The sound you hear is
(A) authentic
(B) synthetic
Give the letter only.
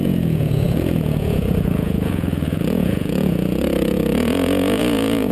B